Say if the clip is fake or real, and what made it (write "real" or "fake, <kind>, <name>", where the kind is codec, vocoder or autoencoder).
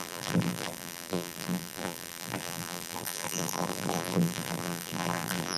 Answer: fake, vocoder, BigVGAN v2